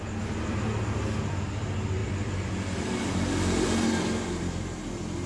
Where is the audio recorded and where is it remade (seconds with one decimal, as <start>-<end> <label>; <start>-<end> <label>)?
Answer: 0.0-2.0 recorded; 2.0-5.3 remade